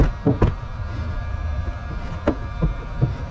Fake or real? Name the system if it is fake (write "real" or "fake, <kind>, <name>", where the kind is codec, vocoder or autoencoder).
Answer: real